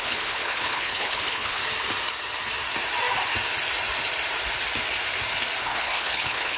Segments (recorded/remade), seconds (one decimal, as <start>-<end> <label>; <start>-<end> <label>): 0.0-1.6 remade; 1.6-5.6 recorded; 5.6-6.6 remade

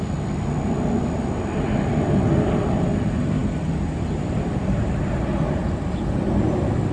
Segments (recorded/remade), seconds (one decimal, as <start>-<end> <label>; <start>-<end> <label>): 0.0-6.9 recorded

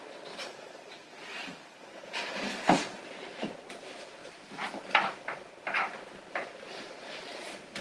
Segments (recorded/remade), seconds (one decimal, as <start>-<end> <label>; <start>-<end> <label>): 0.0-4.2 remade; 4.2-5.6 recorded; 5.6-7.8 remade

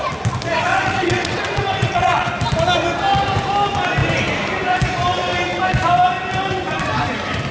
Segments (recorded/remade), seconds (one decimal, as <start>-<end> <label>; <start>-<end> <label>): 0.0-0.7 recorded; 0.7-2.3 remade; 2.3-7.5 recorded

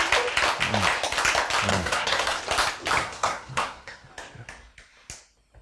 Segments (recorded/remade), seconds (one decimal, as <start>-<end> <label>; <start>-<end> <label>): 0.0-1.7 recorded; 1.7-2.4 remade; 2.4-3.0 recorded; 3.0-4.1 remade; 4.1-5.6 recorded

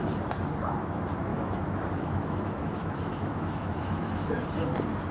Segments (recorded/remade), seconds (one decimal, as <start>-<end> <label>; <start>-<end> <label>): 0.0-1.3 recorded; 1.3-4.4 remade; 4.4-5.1 recorded